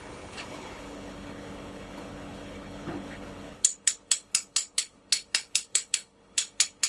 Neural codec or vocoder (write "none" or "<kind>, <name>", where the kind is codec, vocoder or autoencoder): codec, HILCodec